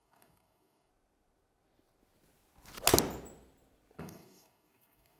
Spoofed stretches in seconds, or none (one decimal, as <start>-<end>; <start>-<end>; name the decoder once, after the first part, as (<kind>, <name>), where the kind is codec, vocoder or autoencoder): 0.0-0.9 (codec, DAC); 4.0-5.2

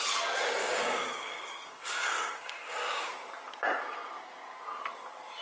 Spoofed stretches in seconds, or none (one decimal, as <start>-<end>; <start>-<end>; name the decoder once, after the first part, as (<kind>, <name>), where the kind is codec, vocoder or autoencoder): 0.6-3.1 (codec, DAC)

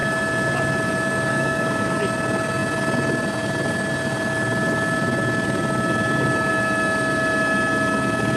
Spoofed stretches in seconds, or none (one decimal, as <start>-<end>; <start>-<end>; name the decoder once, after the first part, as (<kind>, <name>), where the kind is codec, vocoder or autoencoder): 1.3-2.0 (codec, DAC)

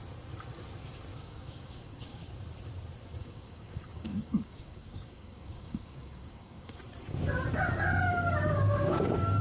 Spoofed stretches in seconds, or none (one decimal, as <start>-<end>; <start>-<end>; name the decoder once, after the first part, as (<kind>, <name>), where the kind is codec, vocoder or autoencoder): 1.1-2.3 (codec, DAC); 3.2-6.8; 8.1-9.4